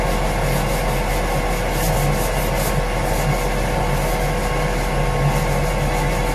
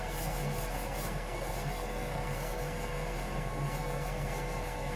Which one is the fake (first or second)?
second